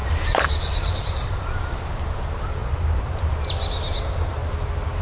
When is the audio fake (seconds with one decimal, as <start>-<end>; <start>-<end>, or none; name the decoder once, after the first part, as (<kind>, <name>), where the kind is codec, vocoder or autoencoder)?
0.0-1.6 (vocoder, BigVGAN v2); 2.6-3.2